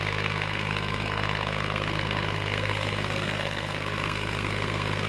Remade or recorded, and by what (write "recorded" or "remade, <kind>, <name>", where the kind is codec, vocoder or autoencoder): remade, codec, SNAC